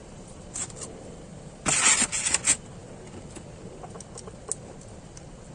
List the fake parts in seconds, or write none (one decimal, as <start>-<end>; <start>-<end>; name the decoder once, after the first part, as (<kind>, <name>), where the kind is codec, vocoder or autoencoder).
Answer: 0.0-0.6 (vocoder, BigVGAN v2)